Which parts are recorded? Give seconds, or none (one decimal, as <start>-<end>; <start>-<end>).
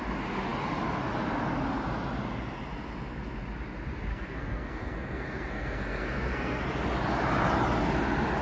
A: 0.0-4.1; 6.6-8.4